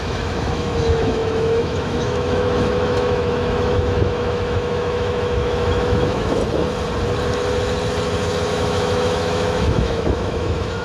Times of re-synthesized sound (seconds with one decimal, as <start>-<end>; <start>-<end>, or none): 0.0-6.4; 8.5-10.8